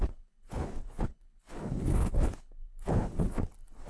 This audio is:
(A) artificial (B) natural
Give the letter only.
A